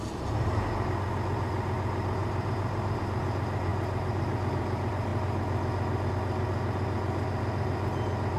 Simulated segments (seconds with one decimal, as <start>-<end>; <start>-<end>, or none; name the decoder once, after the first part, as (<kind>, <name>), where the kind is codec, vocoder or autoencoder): 2.2-3.0 (vocoder, BigVGAN v2)